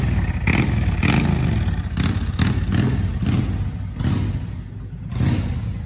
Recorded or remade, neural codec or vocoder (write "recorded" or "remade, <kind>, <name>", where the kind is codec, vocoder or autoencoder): recorded